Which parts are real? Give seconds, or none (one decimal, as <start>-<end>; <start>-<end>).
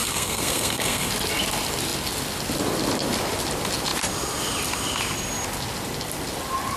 1.1-6.8